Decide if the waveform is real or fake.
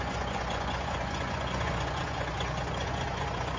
fake